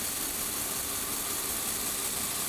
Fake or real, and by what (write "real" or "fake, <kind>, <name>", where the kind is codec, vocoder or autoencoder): real